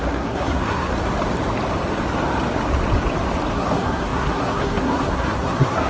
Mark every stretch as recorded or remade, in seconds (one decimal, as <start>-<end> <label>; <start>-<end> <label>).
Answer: 0.0-0.9 remade; 0.9-3.5 recorded; 3.5-5.9 remade